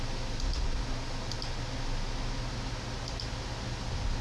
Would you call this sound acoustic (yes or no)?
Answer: yes